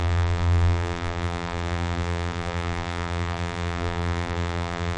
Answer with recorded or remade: remade